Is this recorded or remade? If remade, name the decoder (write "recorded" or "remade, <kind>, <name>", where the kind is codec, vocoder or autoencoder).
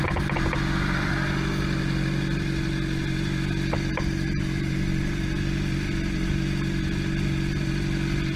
recorded